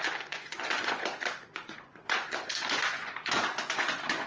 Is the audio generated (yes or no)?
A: yes